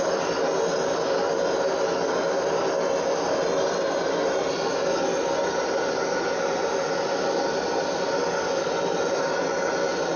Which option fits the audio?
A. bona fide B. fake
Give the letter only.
A